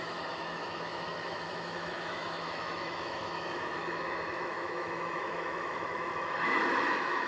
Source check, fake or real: fake